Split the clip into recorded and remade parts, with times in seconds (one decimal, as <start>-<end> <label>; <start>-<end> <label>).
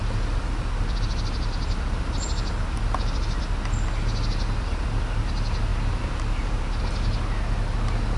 0.0-1.0 remade; 1.0-5.7 recorded; 5.7-6.8 remade; 6.8-8.2 recorded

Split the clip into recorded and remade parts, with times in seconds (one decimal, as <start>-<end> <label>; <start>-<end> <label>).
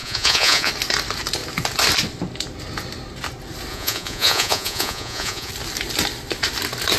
0.0-0.7 remade; 0.7-3.7 recorded; 3.7-5.5 remade; 5.5-7.0 recorded